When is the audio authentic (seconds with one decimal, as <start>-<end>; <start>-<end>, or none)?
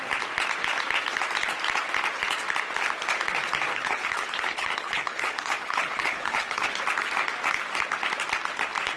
0.0-3.7; 6.7-9.0